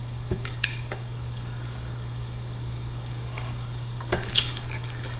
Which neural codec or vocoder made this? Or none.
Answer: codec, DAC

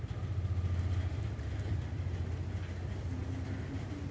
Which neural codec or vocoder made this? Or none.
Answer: none